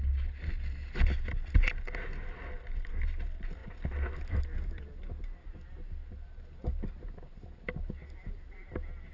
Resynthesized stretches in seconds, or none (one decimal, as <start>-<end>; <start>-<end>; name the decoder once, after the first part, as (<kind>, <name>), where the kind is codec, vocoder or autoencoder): none

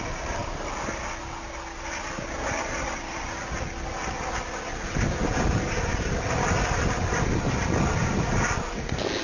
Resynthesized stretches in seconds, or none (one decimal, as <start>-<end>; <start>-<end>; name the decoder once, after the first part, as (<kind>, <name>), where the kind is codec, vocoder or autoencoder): none